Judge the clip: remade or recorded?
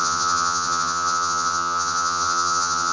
remade